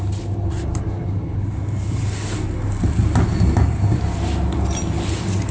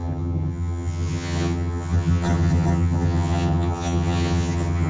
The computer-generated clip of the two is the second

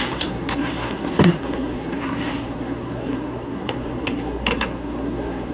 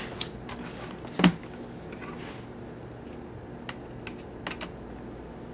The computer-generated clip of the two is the first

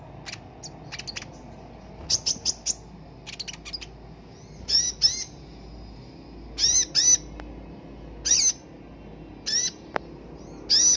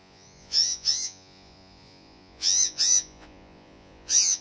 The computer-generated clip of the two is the second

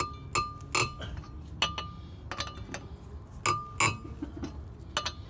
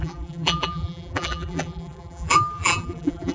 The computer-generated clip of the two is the second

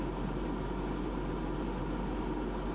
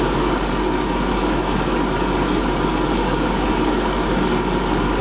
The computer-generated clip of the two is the second